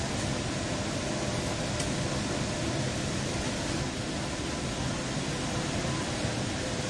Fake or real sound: real